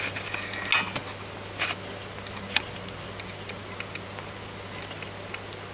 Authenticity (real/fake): real